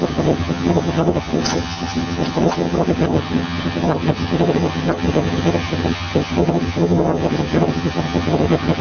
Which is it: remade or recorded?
remade